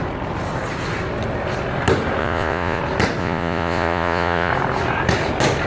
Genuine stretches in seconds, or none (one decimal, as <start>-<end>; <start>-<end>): 0.0-2.2; 2.8-3.2; 4.5-5.7